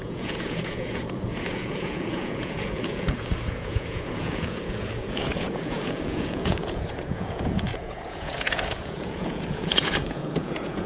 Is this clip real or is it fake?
fake